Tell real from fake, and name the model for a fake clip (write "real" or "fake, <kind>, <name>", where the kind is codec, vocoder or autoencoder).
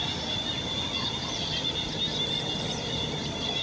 real